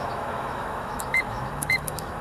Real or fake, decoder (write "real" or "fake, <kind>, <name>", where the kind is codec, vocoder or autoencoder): fake, autoencoder, DAC-VAE